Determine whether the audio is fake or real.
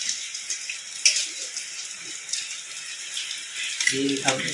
real